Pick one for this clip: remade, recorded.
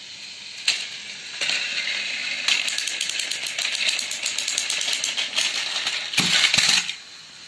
recorded